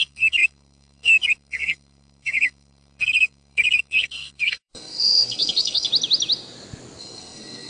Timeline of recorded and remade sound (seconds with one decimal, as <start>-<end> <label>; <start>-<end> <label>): 0.0-5.9 remade; 5.9-7.0 recorded; 7.0-7.7 remade